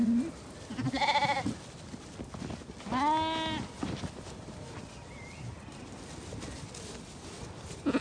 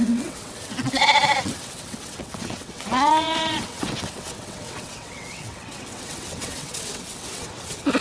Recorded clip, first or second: first